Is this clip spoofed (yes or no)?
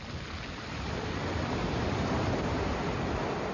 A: no